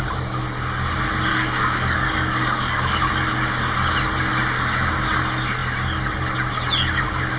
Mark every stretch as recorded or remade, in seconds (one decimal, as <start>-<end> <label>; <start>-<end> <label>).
0.0-1.3 recorded; 1.3-3.1 remade; 3.1-7.4 recorded